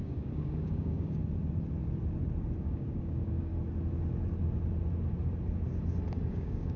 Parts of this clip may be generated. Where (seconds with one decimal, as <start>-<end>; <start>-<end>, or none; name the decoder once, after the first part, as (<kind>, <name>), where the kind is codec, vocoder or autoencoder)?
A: 0.0-1.2 (codec, DAC); 2.6-3.5; 6.3-6.8